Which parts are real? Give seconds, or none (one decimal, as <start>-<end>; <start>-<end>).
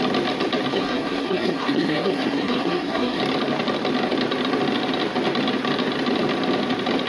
0.0-0.7; 3.2-7.1